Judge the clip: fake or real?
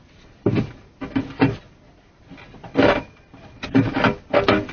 real